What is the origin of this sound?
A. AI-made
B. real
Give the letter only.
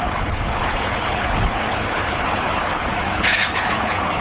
A